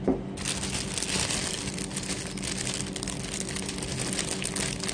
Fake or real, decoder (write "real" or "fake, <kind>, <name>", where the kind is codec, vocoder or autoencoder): real